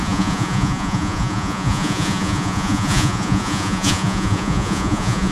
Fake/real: fake